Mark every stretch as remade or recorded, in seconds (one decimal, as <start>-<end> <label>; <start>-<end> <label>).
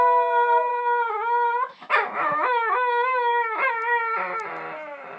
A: 0.0-0.7 recorded; 0.7-3.7 remade; 3.7-5.2 recorded